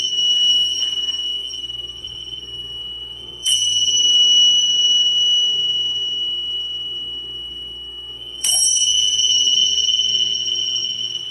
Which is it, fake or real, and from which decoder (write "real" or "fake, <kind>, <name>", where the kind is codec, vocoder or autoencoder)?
fake, codec, SNAC